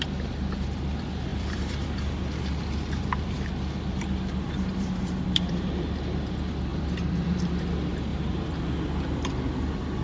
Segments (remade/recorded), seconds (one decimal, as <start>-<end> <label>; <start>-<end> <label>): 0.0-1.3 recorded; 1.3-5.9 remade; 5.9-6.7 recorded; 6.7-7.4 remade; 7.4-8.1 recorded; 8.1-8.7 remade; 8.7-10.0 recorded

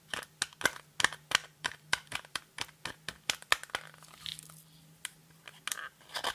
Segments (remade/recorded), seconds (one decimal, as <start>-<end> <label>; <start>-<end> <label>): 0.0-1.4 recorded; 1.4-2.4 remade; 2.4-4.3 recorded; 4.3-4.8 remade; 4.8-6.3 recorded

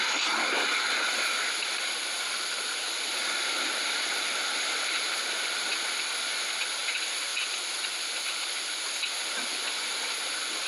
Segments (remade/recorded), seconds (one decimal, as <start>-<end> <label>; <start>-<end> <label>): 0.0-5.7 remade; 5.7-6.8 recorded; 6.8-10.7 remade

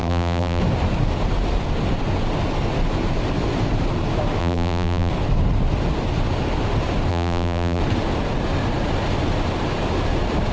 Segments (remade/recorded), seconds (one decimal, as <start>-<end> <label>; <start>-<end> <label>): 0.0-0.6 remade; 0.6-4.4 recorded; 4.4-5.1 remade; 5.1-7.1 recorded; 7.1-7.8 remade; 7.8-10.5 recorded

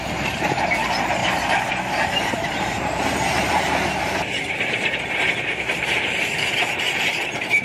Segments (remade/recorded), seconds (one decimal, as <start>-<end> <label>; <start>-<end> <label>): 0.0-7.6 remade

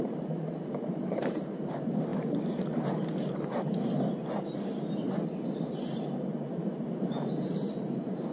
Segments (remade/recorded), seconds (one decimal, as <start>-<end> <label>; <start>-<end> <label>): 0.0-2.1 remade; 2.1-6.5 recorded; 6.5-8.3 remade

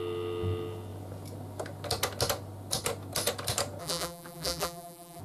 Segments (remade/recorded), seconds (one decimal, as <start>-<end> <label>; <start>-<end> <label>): 0.0-3.8 recorded; 3.8-5.2 remade